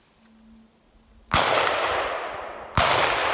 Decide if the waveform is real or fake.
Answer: real